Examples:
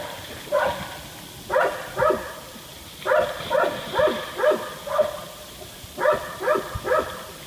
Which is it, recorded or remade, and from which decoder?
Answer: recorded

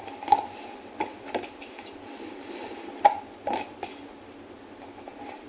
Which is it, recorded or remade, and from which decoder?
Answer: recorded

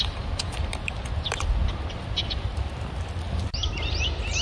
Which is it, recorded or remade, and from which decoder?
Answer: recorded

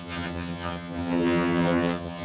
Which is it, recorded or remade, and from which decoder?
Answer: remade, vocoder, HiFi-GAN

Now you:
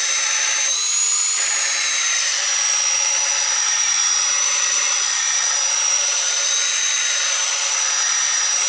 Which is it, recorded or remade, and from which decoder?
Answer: remade, vocoder, BigVGAN v2